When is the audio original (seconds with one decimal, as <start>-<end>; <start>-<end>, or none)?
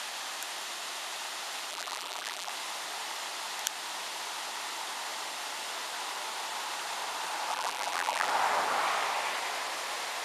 0.0-1.7; 2.5-7.5; 8.3-10.2